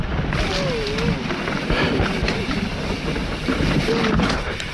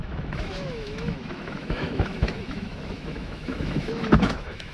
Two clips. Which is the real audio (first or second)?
first